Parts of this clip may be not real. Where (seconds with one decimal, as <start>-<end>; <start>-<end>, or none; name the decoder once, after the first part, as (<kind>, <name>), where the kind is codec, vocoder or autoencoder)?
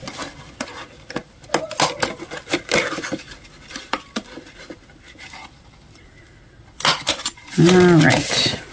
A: none